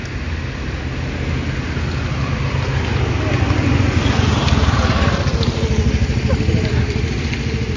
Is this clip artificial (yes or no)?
no